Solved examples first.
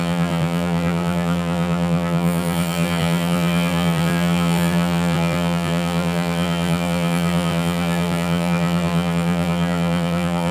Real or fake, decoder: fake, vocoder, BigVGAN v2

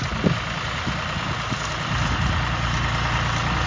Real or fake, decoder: real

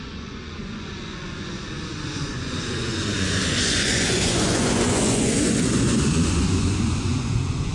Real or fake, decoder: fake, vocoder, Vocos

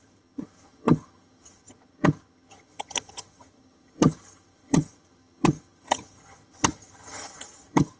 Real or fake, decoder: fake, vocoder, HiFi-GAN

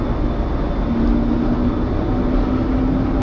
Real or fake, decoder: real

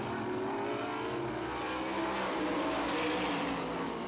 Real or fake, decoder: real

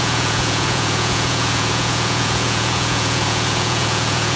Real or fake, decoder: fake, vocoder, Vocos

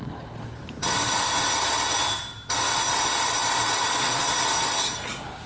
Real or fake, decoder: fake, vocoder, BigVGAN v2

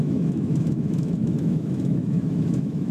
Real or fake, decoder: fake, autoencoder, DAC-VAE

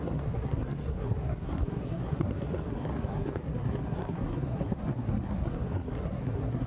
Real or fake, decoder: fake, codec, SNAC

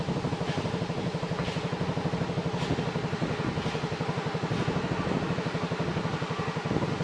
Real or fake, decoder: real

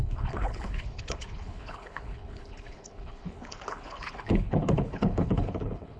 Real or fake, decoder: fake, codec, HILCodec